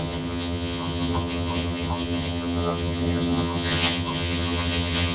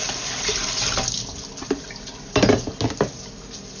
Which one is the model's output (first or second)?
first